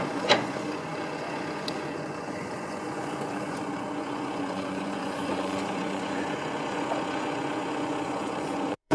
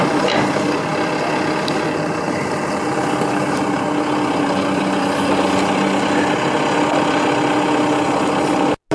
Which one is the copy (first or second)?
first